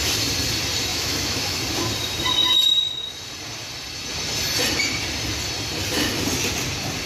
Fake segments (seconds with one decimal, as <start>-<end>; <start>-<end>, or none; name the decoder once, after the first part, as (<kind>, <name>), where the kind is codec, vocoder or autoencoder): 0.9-1.6 (autoencoder, DAC-VAE)